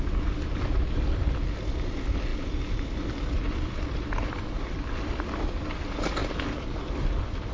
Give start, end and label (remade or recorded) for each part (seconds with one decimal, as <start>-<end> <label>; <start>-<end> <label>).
0.0-7.5 recorded